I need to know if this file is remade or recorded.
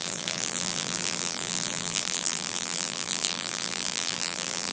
remade